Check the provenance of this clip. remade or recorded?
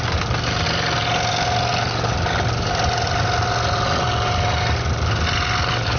recorded